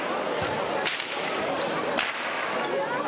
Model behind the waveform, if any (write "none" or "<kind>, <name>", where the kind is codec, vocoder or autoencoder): none